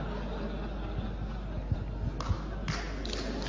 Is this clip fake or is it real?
real